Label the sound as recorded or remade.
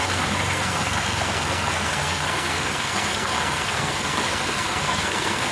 remade